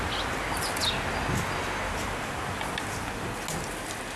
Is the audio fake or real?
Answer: real